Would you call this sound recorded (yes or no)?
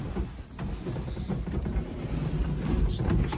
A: yes